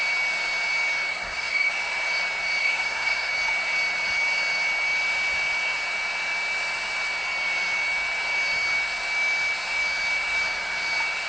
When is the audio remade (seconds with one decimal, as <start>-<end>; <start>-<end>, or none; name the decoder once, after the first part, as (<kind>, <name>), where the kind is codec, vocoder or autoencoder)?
1.1-1.7 (codec, SNAC); 2.6-3.3

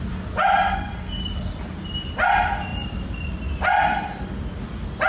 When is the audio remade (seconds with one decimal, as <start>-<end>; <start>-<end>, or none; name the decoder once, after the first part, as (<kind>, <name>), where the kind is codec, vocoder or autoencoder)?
0.6-1.2 (codec, SNAC)

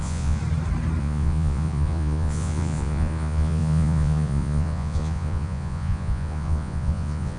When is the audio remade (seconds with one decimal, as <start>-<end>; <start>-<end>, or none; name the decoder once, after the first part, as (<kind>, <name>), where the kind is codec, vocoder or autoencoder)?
0.0-0.4 (vocoder, Vocos); 1.0-7.4

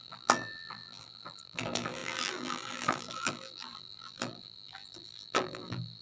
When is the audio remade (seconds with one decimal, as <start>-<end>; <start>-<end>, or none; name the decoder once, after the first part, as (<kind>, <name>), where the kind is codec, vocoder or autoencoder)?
0.0-6.0 (vocoder, BigVGAN v2)

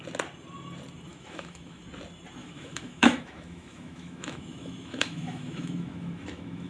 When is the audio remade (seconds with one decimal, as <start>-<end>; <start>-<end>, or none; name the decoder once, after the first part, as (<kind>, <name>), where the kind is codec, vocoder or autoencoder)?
1.1-1.8 (autoencoder, DAC-VAE); 2.4-6.7

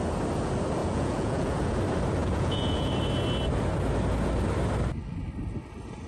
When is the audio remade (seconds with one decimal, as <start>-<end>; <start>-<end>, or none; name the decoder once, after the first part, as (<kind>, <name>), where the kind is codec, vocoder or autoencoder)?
0.8-1.8 (vocoder, Vocos); 2.2-2.9

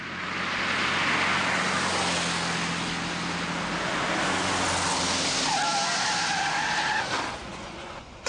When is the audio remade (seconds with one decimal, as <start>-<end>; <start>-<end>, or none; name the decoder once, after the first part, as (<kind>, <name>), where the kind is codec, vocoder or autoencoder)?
7.4-8.3 (vocoder, Vocos)

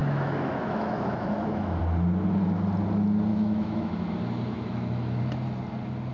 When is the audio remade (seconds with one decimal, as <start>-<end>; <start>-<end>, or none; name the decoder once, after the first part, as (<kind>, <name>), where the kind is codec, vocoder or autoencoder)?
0.0-1.8 (autoencoder, DAC-VAE); 3.3-4.1; 4.5-5.2